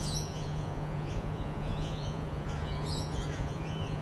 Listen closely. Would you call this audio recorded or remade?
remade